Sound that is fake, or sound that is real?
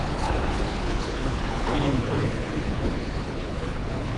fake